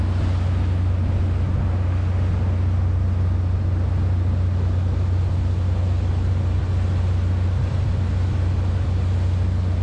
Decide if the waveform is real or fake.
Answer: real